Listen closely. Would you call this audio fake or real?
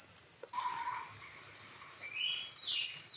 real